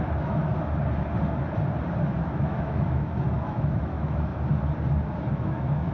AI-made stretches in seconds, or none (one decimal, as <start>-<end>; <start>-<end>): 0.0-0.5; 2.2-4.3; 5.3-5.9